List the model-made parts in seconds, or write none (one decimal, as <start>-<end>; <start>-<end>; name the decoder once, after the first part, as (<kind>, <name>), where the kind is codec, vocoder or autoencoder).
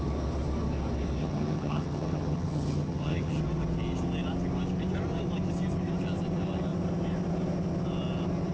1.2-3.4 (vocoder, HiFi-GAN)